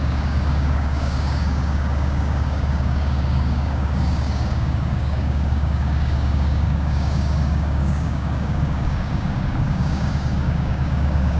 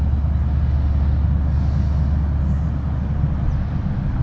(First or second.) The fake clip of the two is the first